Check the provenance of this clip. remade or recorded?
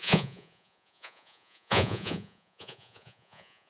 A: remade